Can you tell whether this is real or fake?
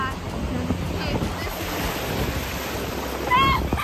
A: real